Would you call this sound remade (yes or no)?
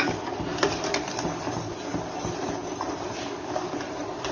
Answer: no